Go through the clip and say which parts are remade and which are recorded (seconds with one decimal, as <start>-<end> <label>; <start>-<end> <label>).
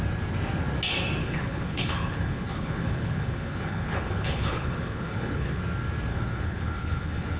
0.0-1.2 recorded; 1.2-5.6 remade; 5.6-6.1 recorded; 6.1-7.4 remade